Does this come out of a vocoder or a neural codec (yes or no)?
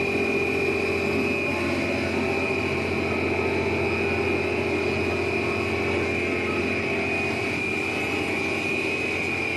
no